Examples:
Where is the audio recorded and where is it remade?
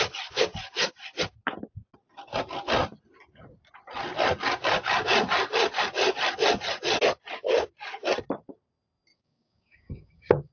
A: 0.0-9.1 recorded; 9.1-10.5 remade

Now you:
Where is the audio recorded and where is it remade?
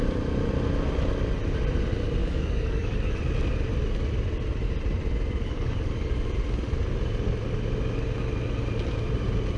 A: 0.0-2.2 recorded; 2.2-3.2 remade; 3.2-5.4 recorded; 5.4-6.2 remade; 6.2-9.6 recorded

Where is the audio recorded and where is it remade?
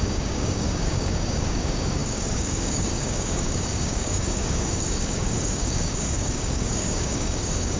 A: 0.0-7.8 remade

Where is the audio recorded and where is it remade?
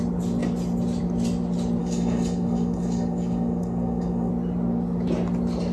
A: 0.0-1.8 recorded; 1.8-4.3 remade; 4.3-5.7 recorded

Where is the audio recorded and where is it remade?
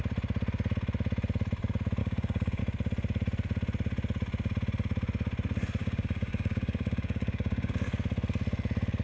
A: 0.0-2.0 recorded; 2.0-2.6 remade; 2.6-5.8 recorded; 5.8-7.7 remade; 7.7-9.0 recorded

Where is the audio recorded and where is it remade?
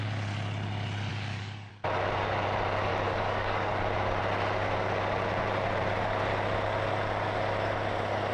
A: 0.0-1.1 recorded; 1.1-1.7 remade; 1.7-2.9 recorded; 2.9-3.7 remade; 3.7-8.3 recorded